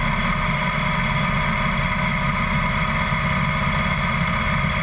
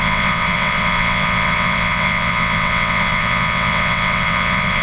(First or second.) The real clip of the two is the first